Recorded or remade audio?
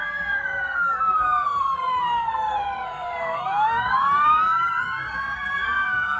remade